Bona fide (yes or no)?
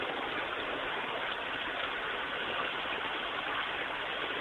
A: yes